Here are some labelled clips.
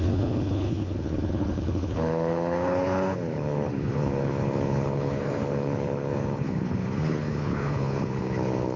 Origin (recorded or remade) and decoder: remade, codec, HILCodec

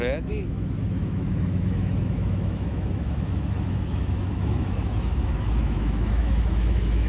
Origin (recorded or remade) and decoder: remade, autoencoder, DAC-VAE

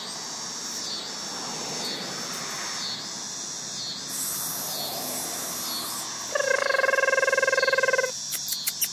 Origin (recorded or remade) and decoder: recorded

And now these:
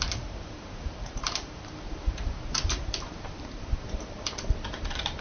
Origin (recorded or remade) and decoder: remade, vocoder, BigVGAN v2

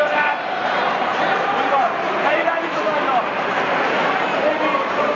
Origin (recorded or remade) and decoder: remade, vocoder, BigVGAN v2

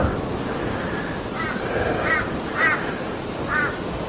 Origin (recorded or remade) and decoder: recorded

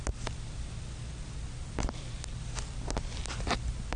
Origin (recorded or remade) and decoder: recorded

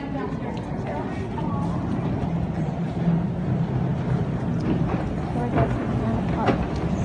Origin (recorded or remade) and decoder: recorded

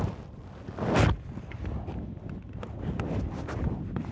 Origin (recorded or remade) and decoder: recorded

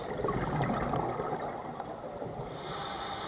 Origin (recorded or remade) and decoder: recorded